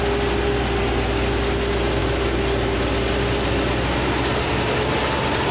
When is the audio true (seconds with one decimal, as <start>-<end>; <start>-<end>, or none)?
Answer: 0.0-5.5